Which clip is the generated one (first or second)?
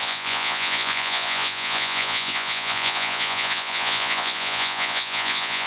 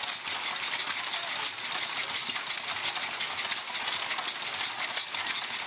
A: first